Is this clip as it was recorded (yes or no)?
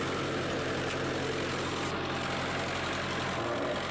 yes